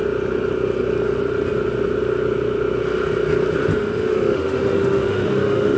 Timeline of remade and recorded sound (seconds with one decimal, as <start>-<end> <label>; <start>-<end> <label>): 0.0-3.7 recorded; 3.7-5.8 remade